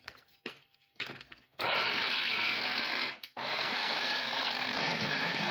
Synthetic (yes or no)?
yes